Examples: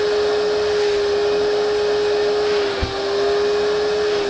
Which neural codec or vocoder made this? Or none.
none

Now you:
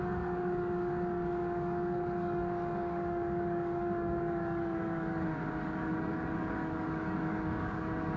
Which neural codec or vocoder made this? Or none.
codec, DAC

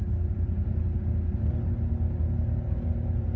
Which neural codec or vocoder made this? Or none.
none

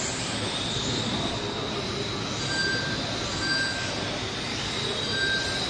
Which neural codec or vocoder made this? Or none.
none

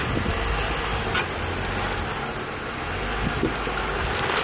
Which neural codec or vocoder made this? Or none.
none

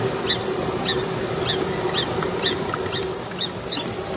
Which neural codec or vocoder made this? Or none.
none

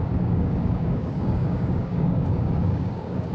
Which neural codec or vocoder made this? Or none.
codec, DAC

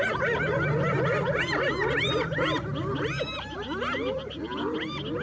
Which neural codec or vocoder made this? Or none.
none